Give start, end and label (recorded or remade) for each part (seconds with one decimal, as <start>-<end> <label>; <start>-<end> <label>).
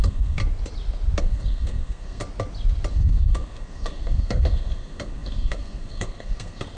0.0-0.4 remade; 0.4-1.2 recorded; 1.2-2.2 remade; 2.2-2.9 recorded; 2.9-6.8 remade